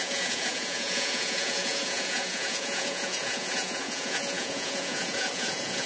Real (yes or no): no